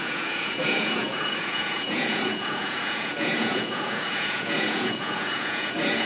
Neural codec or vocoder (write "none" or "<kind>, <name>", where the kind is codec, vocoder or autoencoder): vocoder, Vocos